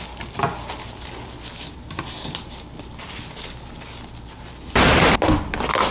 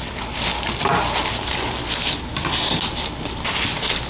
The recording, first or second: first